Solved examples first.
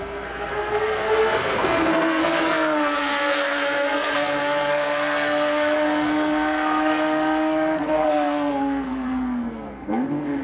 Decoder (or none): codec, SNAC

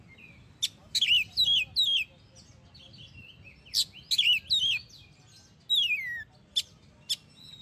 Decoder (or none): none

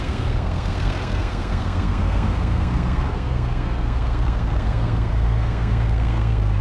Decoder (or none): codec, SNAC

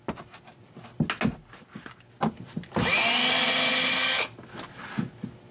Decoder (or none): none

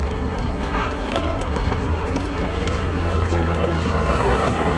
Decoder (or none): codec, SNAC